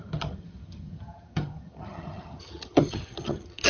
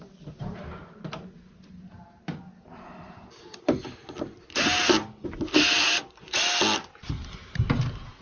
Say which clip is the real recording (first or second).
second